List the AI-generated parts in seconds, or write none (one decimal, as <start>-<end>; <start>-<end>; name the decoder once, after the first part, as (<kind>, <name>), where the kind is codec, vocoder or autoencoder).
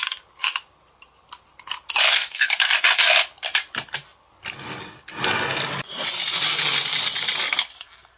2.1-2.7 (codec, SNAC)